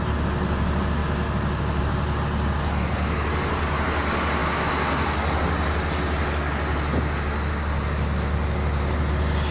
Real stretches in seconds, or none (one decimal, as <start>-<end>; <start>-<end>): 0.0-9.5